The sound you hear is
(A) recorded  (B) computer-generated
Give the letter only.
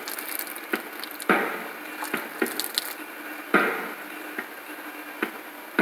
A